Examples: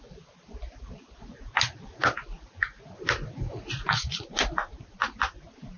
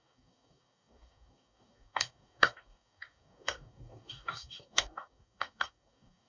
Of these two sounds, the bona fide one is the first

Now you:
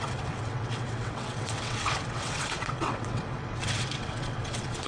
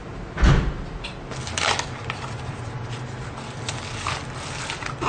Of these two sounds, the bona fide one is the second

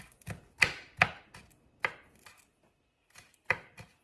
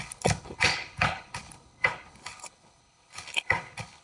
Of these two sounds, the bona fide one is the first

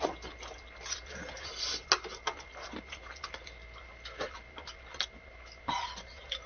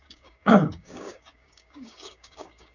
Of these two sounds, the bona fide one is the first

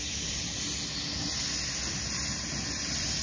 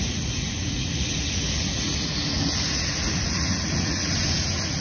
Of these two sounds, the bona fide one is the first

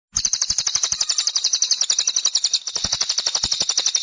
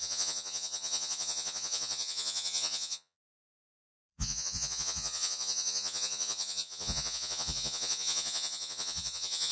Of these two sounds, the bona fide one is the first